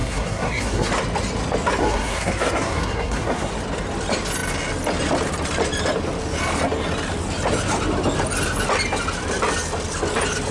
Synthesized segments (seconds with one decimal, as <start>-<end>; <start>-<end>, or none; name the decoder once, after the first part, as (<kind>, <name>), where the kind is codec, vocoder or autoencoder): 0.0-0.9 (codec, SNAC); 1.8-3.5